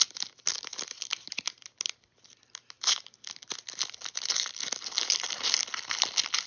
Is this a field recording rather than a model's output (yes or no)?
yes